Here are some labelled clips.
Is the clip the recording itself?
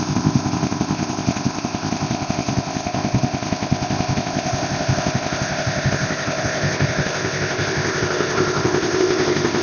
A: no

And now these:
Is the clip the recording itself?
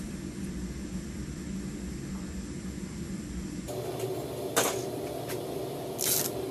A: yes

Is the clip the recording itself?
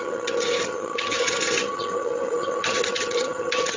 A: no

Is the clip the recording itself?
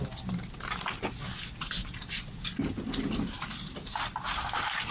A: yes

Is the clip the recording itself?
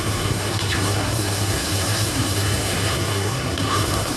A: no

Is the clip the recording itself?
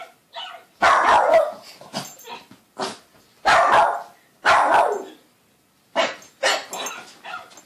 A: yes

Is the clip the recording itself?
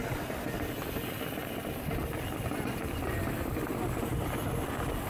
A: yes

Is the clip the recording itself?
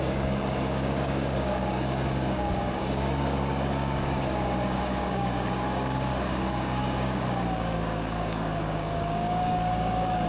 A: no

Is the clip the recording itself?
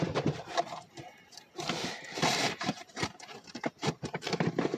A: no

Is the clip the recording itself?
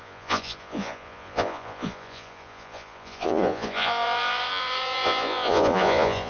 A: no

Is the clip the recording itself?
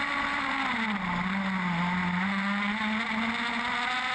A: yes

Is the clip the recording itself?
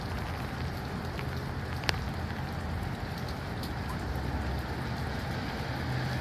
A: yes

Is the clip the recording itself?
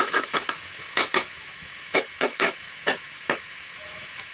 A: no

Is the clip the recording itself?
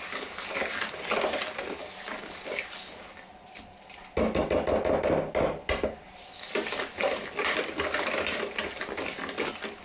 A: yes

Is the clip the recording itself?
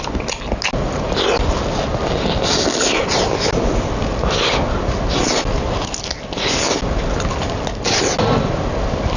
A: yes